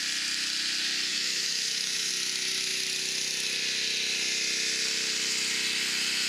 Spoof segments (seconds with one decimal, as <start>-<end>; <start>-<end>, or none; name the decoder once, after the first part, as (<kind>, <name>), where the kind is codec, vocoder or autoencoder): 1.1-2.1 (autoencoder, DAC-VAE)